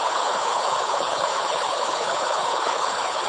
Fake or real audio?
fake